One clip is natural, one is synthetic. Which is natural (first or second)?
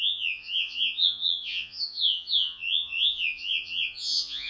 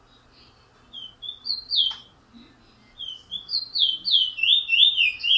second